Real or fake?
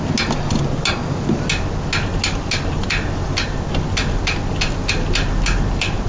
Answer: real